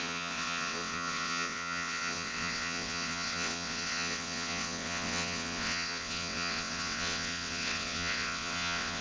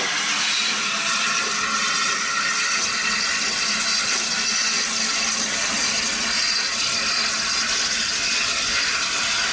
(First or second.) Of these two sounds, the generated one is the first